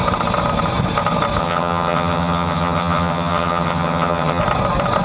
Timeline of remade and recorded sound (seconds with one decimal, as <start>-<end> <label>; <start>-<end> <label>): 0.0-1.4 recorded; 1.4-4.4 remade; 4.4-5.0 recorded